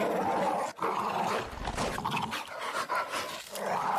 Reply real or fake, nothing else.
real